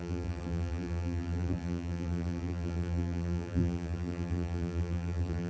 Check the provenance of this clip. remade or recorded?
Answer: remade